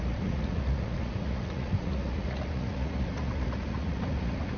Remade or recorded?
remade